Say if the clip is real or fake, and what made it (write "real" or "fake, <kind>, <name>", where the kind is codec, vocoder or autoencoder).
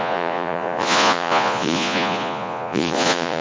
fake, vocoder, Vocos